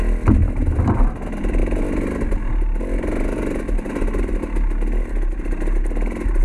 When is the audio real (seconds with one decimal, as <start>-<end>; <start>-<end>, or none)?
0.0-6.4